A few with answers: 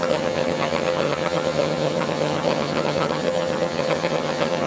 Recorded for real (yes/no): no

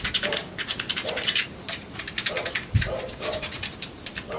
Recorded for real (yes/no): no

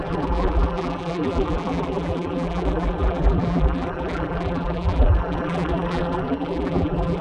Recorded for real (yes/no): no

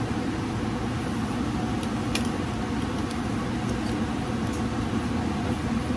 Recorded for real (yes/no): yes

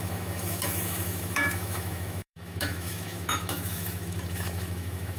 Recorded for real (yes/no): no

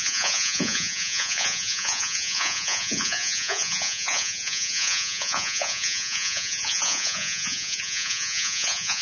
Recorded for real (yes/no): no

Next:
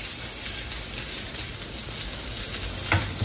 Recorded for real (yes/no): yes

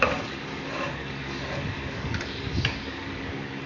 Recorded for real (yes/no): no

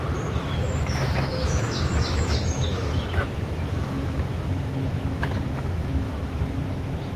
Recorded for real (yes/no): no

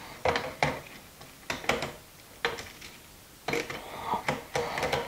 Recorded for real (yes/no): yes